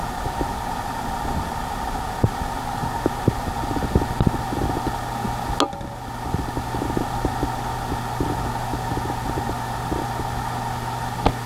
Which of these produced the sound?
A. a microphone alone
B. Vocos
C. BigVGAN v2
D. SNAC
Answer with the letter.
A